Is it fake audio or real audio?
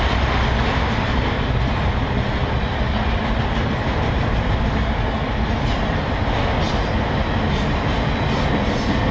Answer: real